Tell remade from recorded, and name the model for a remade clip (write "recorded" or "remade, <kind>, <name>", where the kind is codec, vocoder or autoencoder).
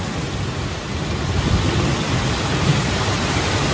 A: recorded